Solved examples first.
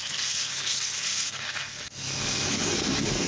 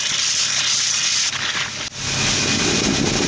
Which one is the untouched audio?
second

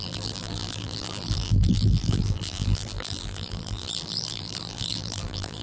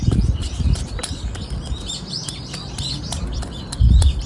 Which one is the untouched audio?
second